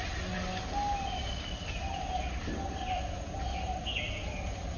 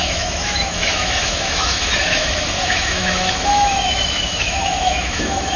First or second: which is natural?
first